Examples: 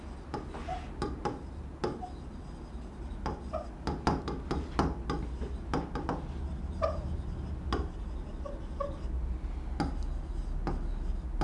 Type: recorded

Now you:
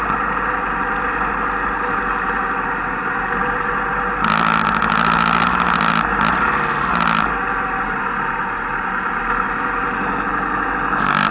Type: recorded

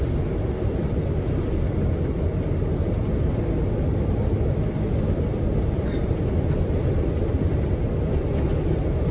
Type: recorded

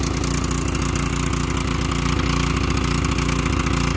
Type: recorded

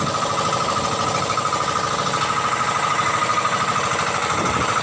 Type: recorded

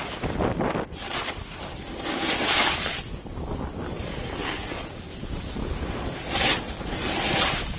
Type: recorded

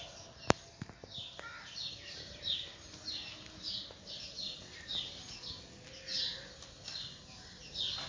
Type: recorded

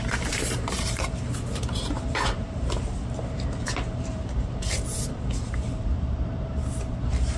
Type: remade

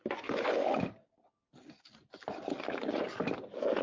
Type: recorded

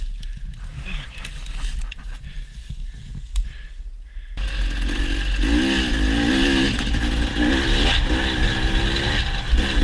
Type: recorded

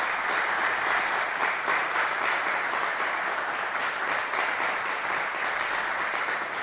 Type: recorded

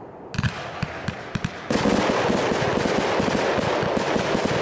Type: recorded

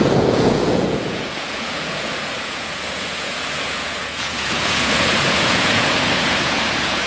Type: remade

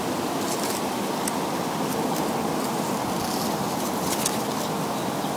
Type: recorded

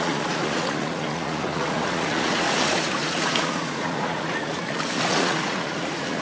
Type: remade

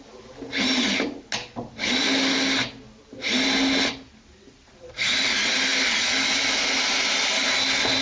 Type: recorded